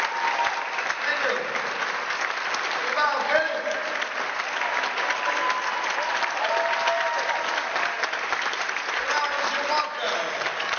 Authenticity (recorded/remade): recorded